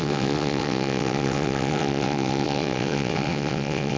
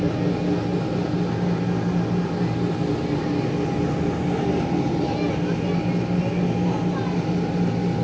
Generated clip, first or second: first